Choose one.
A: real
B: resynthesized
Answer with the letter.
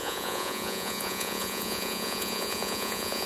B